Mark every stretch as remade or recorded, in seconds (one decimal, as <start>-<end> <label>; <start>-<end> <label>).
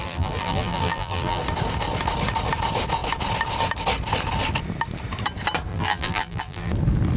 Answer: 0.0-1.4 remade; 1.4-5.7 recorded; 5.7-6.7 remade; 6.7-7.2 recorded